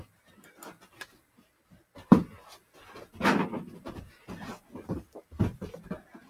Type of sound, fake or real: real